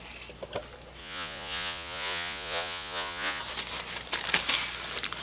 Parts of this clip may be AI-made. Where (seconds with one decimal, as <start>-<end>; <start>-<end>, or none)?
1.0-3.4